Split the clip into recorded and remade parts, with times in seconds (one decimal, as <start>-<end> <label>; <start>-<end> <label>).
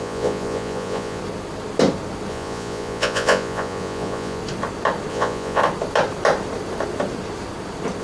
0.0-1.2 remade; 1.2-2.3 recorded; 2.3-4.4 remade; 4.4-5.1 recorded; 5.1-5.6 remade; 5.6-8.0 recorded